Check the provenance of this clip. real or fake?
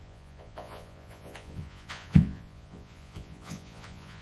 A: fake